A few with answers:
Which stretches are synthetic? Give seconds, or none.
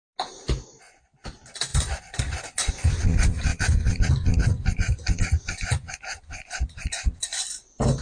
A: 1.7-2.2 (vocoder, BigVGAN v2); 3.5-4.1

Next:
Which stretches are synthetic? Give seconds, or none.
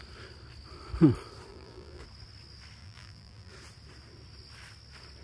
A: 1.5-2.0 (vocoder, BigVGAN v2); 2.8-3.5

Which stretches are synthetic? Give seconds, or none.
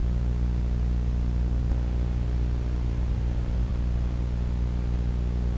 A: 2.9-3.7 (vocoder, BigVGAN v2)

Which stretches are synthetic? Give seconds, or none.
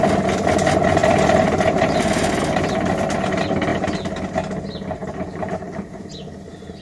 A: 1.0-2.4 (vocoder, BigVGAN v2)